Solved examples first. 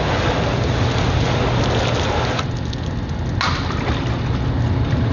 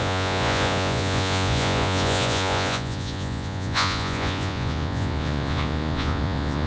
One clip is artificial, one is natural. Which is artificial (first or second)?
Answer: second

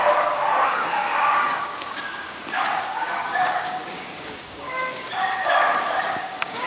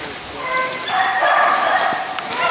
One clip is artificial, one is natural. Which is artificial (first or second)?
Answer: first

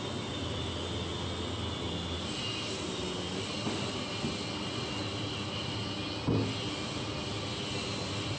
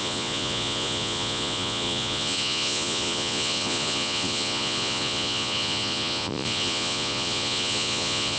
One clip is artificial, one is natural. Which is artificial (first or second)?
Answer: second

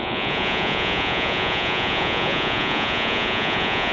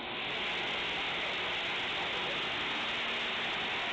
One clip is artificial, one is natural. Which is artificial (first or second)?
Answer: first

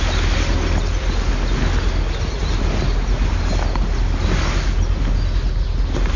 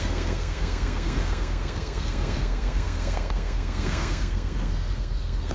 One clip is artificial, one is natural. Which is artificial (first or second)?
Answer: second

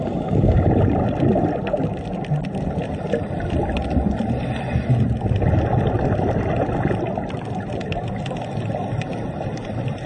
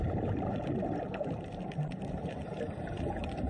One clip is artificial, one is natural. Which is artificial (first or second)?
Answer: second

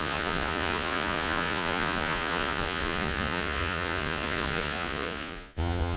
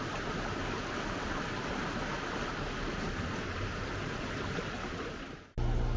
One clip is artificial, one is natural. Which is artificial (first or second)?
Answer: first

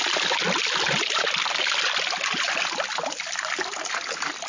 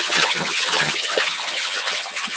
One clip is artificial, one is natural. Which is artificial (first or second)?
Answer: second